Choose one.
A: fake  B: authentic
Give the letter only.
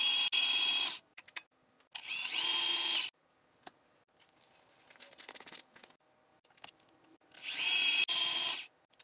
B